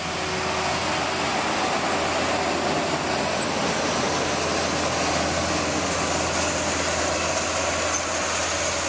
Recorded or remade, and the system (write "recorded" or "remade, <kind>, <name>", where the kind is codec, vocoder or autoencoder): recorded